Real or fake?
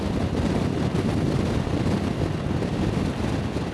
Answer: real